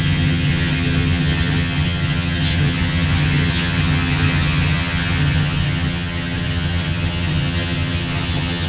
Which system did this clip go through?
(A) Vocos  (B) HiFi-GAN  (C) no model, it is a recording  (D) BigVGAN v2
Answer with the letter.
B